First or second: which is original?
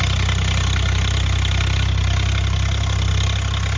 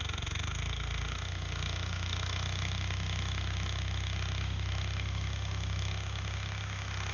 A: first